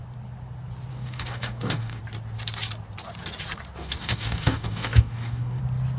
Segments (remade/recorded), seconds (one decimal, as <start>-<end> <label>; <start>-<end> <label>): 0.0-0.9 recorded; 0.9-2.0 remade; 2.0-3.8 recorded; 3.8-5.6 remade; 5.6-6.0 recorded